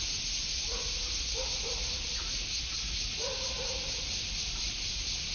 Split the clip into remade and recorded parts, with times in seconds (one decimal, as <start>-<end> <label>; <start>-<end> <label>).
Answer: 0.0-5.3 recorded